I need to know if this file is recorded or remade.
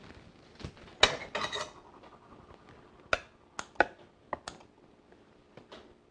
recorded